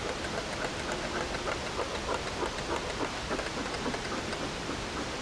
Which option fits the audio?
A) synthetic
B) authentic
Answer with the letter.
B